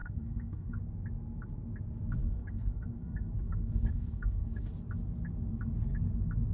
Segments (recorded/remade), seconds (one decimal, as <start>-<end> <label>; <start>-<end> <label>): 0.0-0.8 remade; 0.8-2.2 recorded; 2.2-4.7 remade; 4.7-6.5 recorded